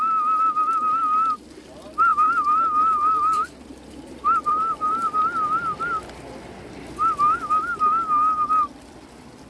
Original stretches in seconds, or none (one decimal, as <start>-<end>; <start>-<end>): 0.0-2.1; 5.2-9.5